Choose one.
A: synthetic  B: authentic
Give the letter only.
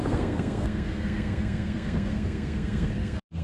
A